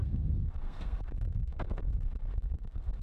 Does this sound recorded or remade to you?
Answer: remade